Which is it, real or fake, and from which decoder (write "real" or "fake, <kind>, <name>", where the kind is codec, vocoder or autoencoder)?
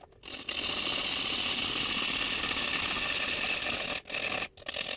real